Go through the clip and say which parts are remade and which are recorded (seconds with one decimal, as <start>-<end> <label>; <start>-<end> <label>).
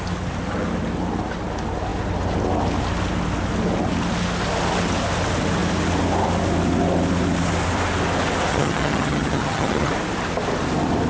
0.0-8.5 recorded; 8.5-9.9 remade; 9.9-11.1 recorded